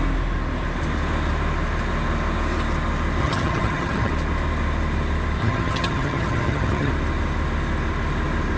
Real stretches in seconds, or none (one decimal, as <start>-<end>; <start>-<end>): 0.0-3.2; 4.1-5.4; 6.9-8.6